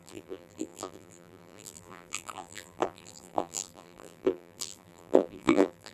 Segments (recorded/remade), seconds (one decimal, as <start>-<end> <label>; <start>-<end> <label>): 0.0-5.9 remade